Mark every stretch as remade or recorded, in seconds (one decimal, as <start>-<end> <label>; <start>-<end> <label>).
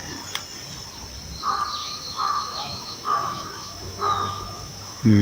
0.0-1.8 recorded; 1.8-5.2 remade